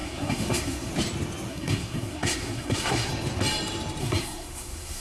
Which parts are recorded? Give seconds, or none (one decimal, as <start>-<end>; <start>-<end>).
0.9-1.5; 3.1-4.0